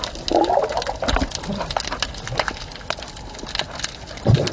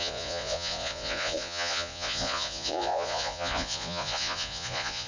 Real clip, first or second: first